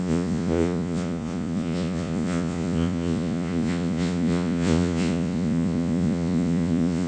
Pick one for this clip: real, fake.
fake